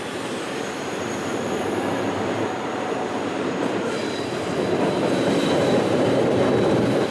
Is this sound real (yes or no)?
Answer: no